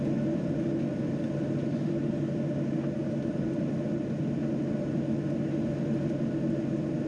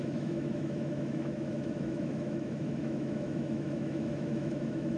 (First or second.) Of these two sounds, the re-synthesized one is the second